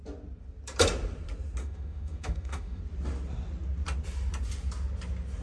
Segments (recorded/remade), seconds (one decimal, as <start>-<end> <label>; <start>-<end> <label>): 0.0-1.6 recorded; 1.6-2.8 remade; 2.8-5.4 recorded